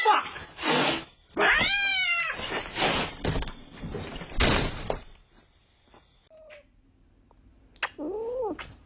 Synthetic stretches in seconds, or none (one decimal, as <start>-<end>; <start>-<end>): 1.9-7.1